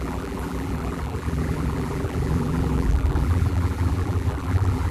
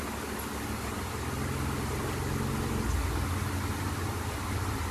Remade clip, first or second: first